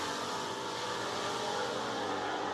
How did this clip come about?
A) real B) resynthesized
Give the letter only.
B